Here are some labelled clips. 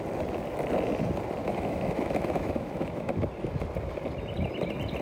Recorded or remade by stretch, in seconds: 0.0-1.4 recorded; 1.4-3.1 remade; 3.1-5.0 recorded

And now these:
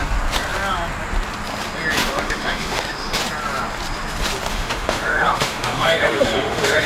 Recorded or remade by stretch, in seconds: 0.0-2.0 recorded; 2.0-3.2 remade; 3.2-4.5 recorded; 4.5-6.9 remade

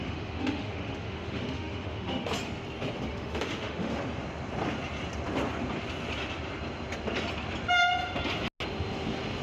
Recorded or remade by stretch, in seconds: 0.0-2.3 remade; 2.3-3.1 recorded; 3.1-4.0 remade; 4.0-9.4 recorded

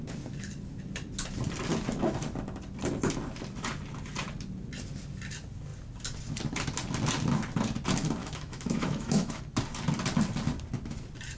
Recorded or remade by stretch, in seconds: 0.0-8.2 recorded; 8.2-9.4 remade; 9.4-11.4 recorded

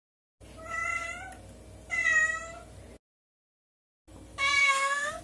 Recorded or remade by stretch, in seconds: 0.0-4.6 recorded; 4.6-5.2 remade